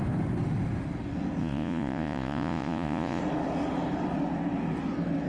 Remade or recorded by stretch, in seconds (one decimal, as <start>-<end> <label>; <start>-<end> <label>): 0.0-1.4 recorded; 1.4-3.2 remade; 3.2-5.3 recorded